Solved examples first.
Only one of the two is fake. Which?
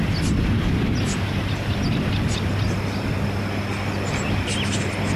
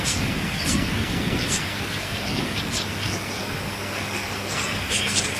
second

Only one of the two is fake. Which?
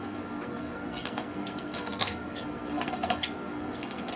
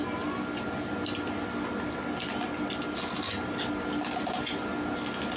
first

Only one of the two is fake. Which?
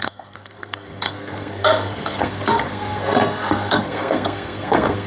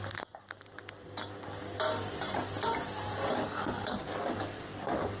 first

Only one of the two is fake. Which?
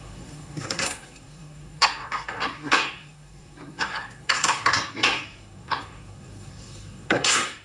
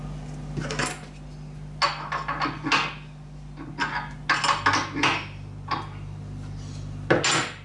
first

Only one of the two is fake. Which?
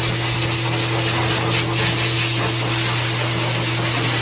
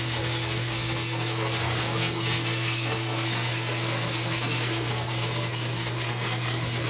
second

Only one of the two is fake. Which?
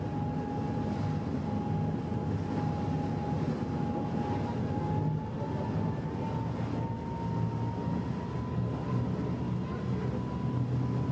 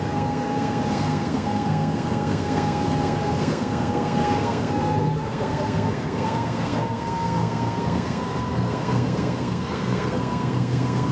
second